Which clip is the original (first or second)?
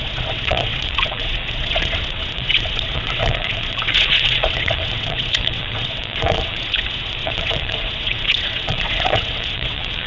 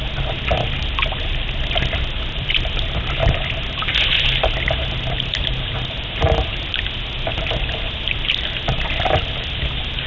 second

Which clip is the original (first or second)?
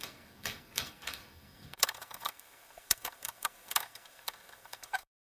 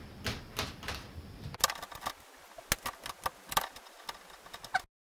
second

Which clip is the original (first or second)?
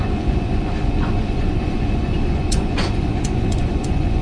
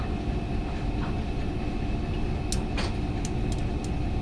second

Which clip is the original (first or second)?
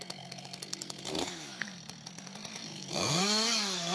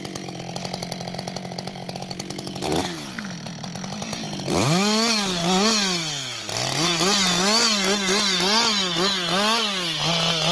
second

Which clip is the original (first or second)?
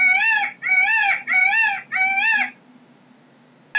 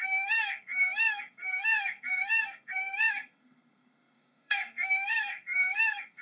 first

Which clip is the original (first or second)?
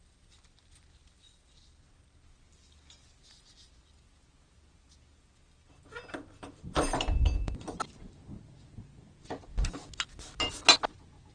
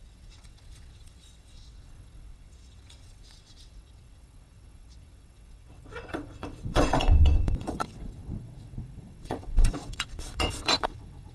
first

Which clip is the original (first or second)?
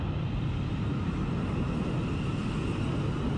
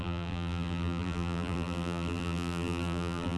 first